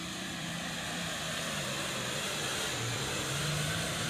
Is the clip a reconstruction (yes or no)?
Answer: yes